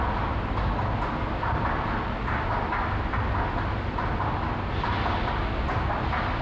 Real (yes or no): yes